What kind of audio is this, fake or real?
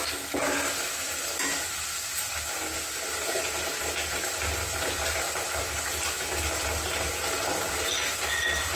real